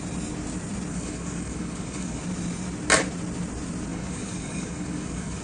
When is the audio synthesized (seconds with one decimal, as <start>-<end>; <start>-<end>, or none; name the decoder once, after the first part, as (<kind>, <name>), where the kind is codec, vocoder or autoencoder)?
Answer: 0.9-2.2 (codec, DAC); 3.9-5.4